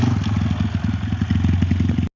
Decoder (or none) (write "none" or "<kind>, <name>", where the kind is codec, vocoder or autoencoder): none